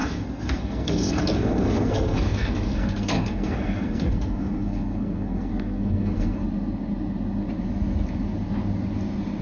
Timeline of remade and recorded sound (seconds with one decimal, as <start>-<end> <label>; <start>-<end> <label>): 0.0-6.4 remade; 6.4-9.4 recorded